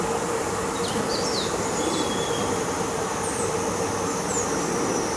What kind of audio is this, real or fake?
real